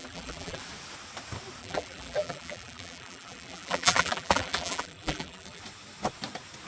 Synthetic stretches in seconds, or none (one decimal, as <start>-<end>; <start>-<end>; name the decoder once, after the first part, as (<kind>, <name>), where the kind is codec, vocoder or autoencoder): 0.0-0.6 (vocoder, BigVGAN v2); 1.6-5.6